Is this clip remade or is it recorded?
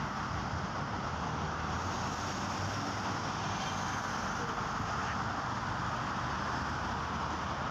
recorded